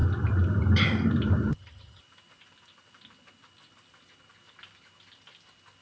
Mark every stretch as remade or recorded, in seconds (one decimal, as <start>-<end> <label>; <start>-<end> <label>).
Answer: 0.0-1.5 recorded; 1.5-2.0 remade; 2.0-5.8 recorded